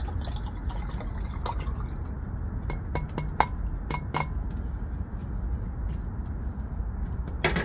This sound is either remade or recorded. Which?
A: recorded